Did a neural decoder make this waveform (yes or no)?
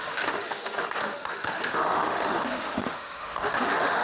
yes